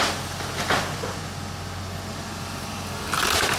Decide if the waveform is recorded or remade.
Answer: recorded